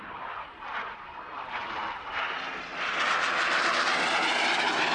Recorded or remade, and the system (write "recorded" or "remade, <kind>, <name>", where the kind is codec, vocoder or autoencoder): recorded